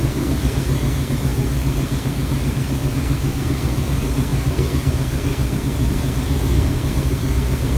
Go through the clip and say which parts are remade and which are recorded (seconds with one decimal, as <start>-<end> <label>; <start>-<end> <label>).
0.0-7.8 remade